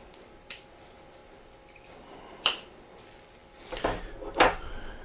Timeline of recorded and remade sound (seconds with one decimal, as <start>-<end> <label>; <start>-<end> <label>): 0.0-5.0 recorded